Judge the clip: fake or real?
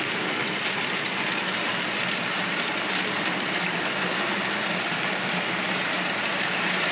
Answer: real